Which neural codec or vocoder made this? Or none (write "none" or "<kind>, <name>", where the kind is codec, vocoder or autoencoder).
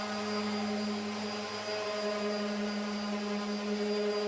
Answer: none